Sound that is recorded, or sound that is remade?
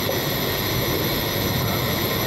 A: recorded